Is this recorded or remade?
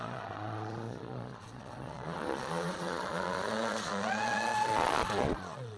remade